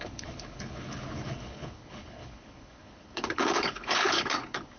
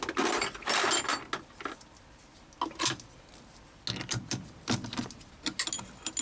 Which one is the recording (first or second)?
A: second